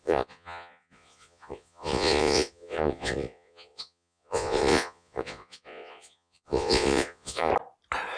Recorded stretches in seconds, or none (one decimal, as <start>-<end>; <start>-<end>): 7.5-8.2